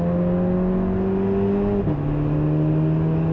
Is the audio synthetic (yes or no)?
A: no